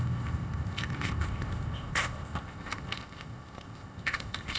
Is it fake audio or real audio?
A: fake